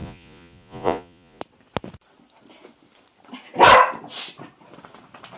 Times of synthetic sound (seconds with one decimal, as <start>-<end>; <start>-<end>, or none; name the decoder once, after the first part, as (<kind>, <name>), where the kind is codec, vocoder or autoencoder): 0.0-1.4 (vocoder, Vocos)